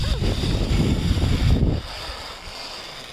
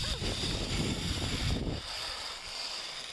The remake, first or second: second